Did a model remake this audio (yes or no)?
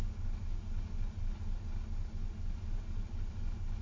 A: no